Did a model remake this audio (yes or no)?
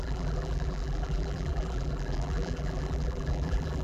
yes